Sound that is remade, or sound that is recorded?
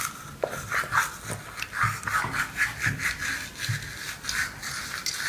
recorded